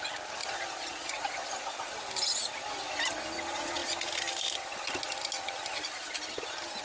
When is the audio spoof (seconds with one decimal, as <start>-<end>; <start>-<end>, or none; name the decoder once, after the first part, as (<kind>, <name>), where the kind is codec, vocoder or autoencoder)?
0.4-1.1 (vocoder, Vocos)